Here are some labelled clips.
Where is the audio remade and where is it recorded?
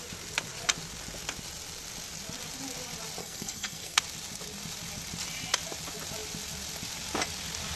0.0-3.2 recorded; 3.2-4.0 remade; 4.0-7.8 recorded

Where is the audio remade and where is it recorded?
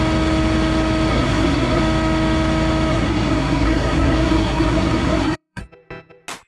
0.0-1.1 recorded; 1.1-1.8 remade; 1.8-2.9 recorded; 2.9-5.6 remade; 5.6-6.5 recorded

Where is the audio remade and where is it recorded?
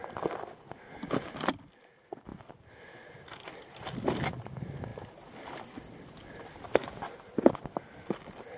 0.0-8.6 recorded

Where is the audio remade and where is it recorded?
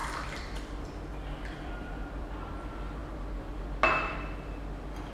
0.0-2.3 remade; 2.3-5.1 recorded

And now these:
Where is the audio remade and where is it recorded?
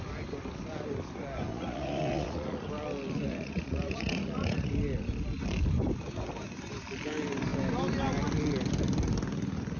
0.0-1.5 recorded; 1.5-2.7 remade; 2.7-3.2 recorded; 3.2-4.7 remade; 4.7-9.8 recorded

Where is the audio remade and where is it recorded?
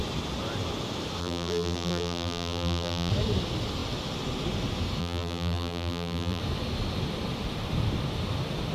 0.0-1.2 recorded; 1.2-3.1 remade; 3.1-5.0 recorded; 5.0-6.4 remade; 6.4-8.7 recorded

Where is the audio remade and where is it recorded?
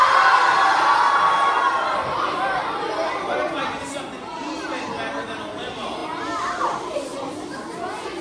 0.0-8.2 recorded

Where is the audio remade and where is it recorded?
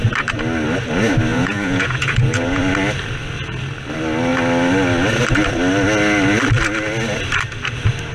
0.0-1.3 recorded; 1.3-2.6 remade; 2.6-8.1 recorded